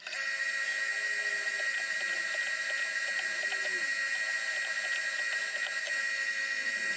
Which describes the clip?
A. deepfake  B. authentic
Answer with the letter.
B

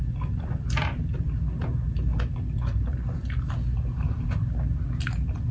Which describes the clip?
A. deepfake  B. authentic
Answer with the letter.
B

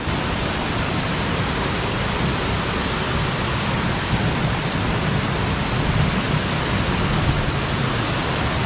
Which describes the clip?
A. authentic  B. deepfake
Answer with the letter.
A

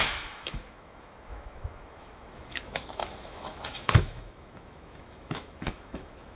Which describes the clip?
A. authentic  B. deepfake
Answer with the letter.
B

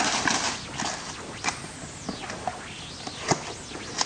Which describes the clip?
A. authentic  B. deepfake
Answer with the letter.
A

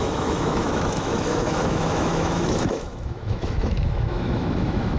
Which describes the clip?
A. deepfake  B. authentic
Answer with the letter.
A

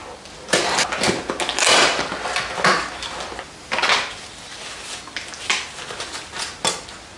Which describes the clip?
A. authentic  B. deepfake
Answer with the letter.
A